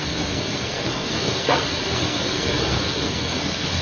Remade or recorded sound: remade